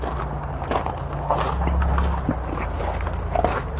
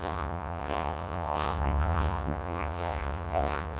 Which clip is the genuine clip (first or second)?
first